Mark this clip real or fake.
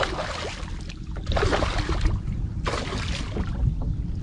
real